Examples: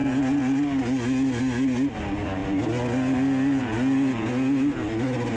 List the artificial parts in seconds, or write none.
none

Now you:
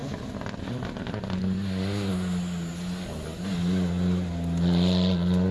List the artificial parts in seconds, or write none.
none

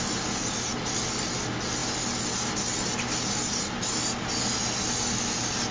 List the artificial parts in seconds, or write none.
none

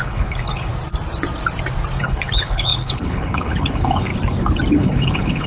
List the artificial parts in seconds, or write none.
0.0-0.7 (codec, HILCodec); 2.0-4.1; 4.7-5.5

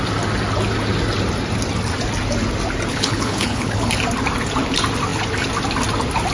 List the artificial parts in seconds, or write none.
2.9-3.9 (codec, HILCodec)